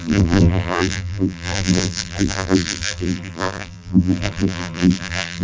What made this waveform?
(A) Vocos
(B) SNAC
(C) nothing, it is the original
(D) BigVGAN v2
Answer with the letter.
D